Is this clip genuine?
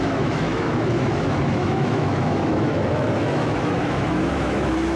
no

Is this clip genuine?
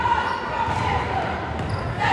yes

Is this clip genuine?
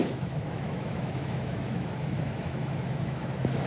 no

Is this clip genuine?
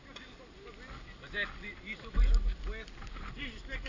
yes